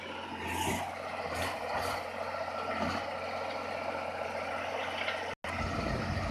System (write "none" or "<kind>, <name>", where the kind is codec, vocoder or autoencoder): none